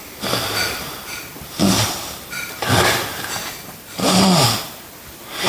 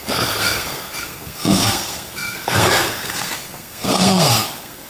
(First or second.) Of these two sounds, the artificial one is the second